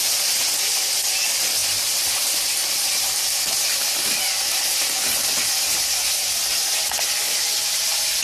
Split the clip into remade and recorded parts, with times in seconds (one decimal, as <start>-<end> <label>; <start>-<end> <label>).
0.0-8.2 recorded